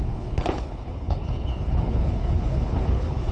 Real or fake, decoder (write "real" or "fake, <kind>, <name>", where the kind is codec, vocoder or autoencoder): fake, codec, HILCodec